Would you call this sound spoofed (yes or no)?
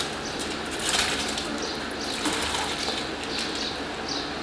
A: no